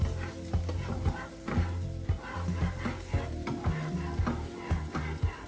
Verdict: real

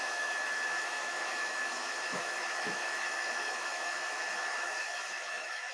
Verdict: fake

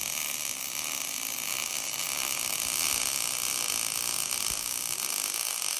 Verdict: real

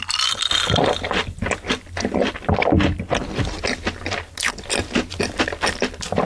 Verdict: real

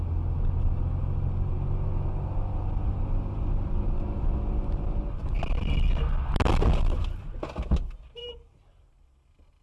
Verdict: real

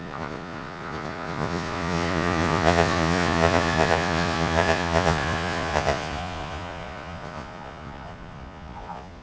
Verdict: fake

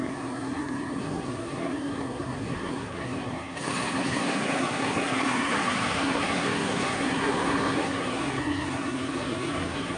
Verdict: fake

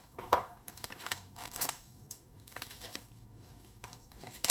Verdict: fake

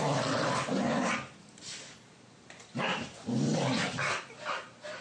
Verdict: fake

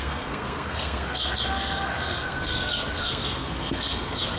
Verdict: fake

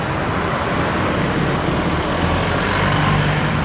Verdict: real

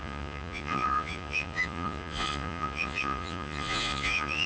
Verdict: fake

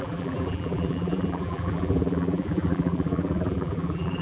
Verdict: fake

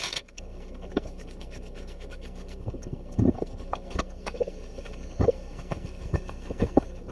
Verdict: fake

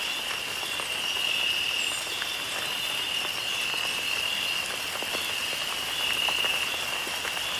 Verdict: real